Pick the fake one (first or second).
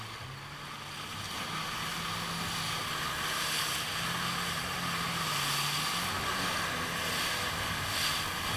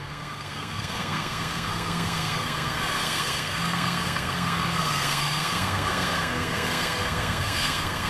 second